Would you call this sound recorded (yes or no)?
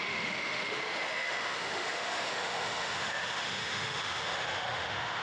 no